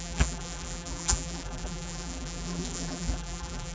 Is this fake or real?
fake